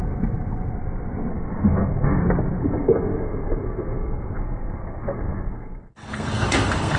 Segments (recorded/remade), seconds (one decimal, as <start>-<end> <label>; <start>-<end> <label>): 0.0-1.3 recorded; 1.3-2.2 remade; 2.2-2.6 recorded; 2.6-7.0 remade